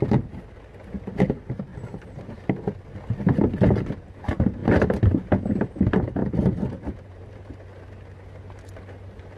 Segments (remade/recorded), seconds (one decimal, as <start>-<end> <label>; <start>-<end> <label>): 0.0-1.7 recorded; 1.7-2.2 remade; 2.2-6.2 recorded; 6.2-7.5 remade; 7.5-9.4 recorded